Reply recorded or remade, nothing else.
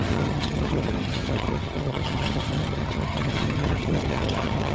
remade